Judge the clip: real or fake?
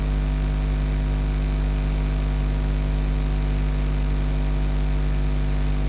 real